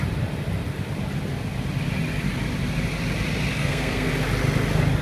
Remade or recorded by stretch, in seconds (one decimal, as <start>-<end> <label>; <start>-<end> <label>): 0.0-3.6 recorded; 3.6-4.1 remade; 4.1-5.0 recorded